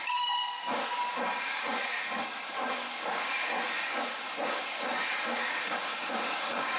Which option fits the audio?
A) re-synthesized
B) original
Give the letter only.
A